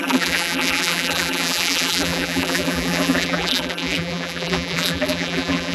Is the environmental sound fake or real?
fake